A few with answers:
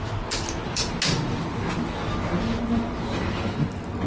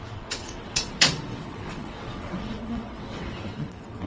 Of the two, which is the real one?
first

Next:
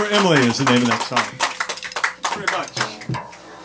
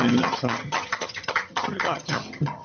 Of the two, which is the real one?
first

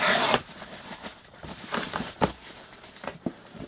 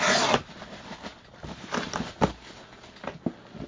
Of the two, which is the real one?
second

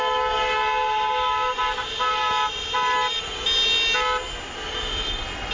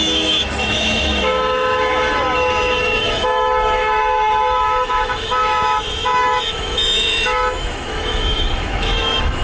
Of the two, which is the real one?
first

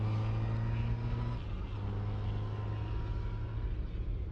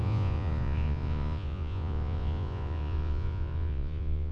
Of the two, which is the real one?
first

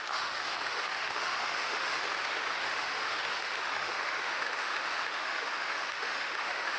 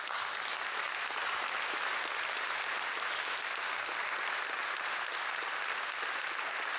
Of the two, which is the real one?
second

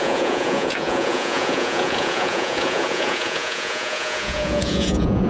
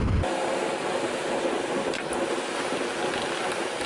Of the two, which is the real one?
second